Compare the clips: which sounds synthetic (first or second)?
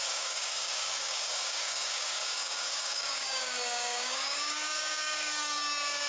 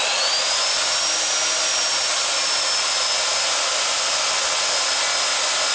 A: first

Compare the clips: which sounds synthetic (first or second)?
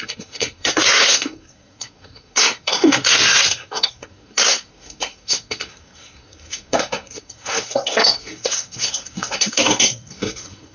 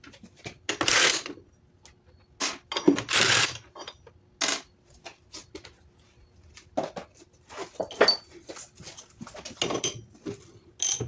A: first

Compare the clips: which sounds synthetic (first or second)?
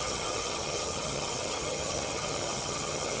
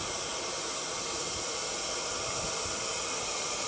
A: first